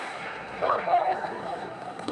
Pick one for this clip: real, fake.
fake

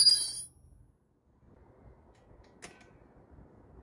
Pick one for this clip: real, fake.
real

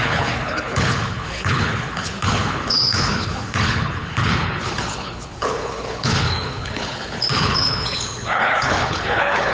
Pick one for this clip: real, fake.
fake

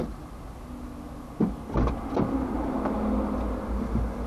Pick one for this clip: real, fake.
real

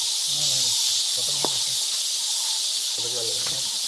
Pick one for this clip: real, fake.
real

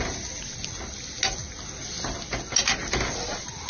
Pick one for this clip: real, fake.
real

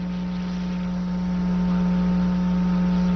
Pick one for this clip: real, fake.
real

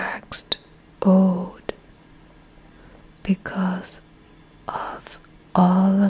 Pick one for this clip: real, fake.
real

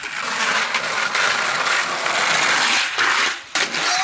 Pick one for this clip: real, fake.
real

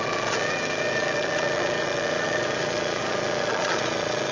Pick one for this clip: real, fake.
fake